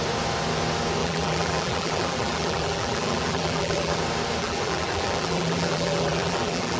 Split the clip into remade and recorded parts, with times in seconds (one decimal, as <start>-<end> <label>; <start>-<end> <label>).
0.0-1.0 recorded; 1.0-4.0 remade; 4.0-4.4 recorded; 4.4-6.8 remade